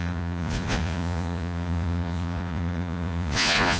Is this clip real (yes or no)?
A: no